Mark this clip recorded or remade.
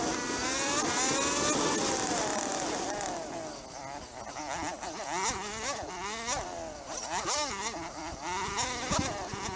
recorded